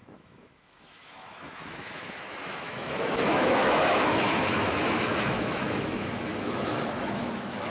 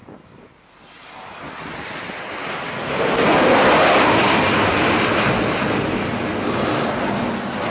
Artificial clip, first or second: first